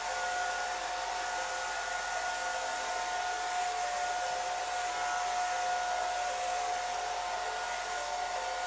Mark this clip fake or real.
real